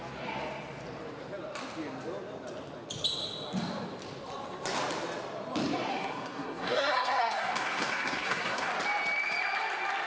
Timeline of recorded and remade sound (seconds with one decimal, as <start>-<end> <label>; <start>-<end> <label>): 0.0-5.9 recorded; 5.9-8.7 remade; 8.7-10.1 recorded